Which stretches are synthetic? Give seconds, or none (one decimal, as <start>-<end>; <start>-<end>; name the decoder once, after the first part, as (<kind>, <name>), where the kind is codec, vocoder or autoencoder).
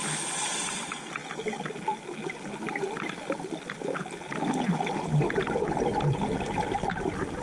none